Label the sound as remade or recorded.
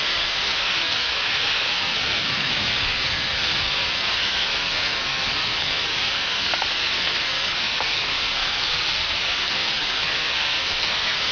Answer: remade